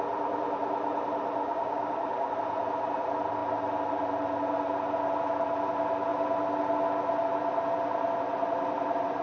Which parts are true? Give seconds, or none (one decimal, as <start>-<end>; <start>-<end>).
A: 0.0-1.4; 2.3-9.2